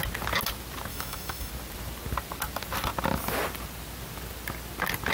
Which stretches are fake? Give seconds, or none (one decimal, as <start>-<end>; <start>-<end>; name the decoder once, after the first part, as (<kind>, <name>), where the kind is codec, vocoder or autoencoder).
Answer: 0.9-1.5 (autoencoder, DAC-VAE)